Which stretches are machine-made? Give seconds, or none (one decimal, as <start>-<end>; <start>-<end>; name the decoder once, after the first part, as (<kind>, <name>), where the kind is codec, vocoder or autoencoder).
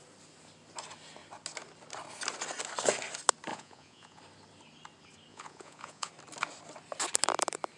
3.5-4.2 (vocoder, Vocos); 5.3-6.1